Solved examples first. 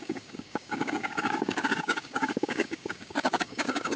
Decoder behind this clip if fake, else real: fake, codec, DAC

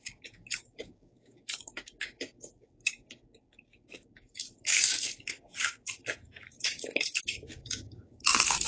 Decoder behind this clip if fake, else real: fake, codec, DAC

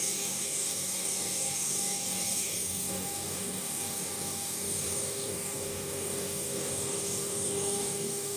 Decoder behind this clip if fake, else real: fake, codec, DAC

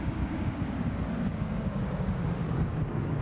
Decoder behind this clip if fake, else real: fake, codec, DAC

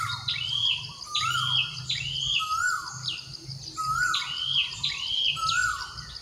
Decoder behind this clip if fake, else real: real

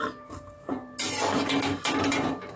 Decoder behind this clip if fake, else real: real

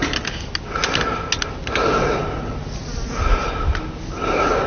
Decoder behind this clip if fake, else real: real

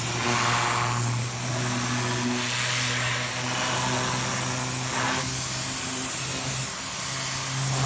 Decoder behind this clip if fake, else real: real